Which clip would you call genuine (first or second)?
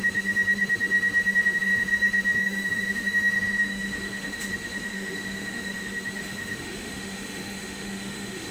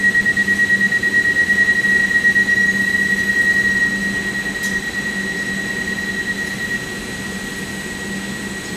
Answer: second